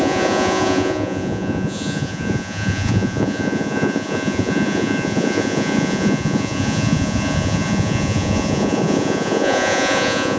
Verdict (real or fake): fake